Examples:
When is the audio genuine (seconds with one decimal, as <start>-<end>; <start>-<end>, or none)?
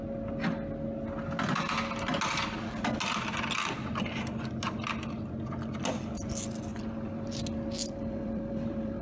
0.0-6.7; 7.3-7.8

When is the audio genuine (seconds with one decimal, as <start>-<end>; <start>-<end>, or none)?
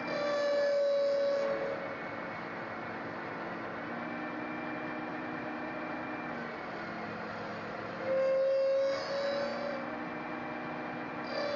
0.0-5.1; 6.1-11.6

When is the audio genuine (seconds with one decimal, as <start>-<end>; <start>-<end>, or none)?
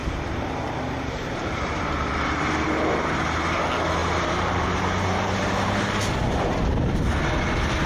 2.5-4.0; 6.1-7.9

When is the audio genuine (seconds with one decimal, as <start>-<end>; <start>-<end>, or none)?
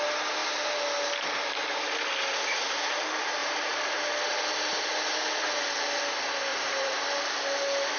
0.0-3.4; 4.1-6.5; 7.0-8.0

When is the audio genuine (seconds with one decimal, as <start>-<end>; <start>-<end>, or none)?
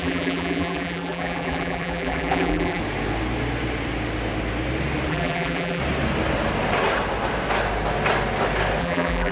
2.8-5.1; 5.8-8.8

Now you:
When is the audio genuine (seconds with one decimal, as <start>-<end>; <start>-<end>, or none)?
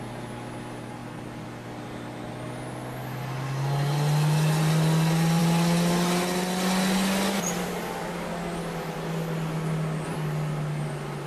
0.0-11.3